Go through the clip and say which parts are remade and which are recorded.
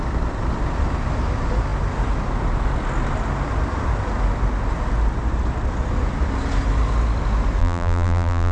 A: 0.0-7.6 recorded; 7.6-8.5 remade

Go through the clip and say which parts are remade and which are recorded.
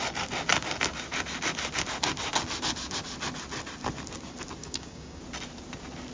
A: 0.0-4.6 recorded; 4.6-5.2 remade; 5.2-6.1 recorded